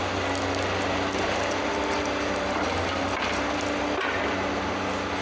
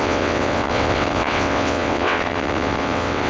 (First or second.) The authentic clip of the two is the first